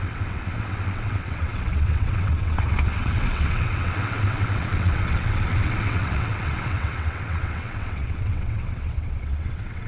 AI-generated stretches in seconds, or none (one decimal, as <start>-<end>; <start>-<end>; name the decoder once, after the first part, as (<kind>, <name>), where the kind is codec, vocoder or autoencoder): 0.0-9.9 (vocoder, WaveNeXt)

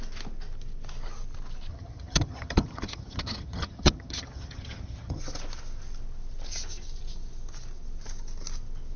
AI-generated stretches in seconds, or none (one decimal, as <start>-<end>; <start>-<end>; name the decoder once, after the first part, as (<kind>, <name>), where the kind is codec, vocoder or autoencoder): 1.7-5.2 (vocoder, HiFi-GAN)

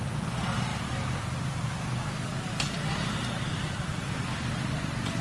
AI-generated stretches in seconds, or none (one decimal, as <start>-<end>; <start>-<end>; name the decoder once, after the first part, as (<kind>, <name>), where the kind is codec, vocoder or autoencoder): none

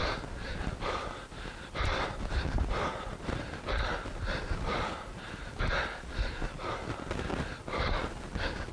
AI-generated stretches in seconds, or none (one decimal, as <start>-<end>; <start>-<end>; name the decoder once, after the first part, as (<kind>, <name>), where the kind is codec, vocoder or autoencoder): none